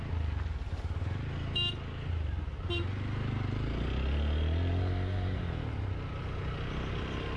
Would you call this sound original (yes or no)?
yes